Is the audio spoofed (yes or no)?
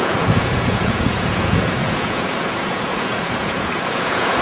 yes